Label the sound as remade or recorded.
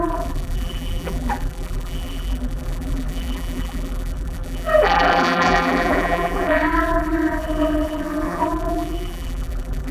remade